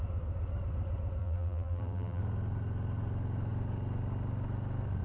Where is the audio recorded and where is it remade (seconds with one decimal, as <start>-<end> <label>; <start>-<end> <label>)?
0.0-1.2 recorded; 1.2-2.2 remade; 2.2-5.0 recorded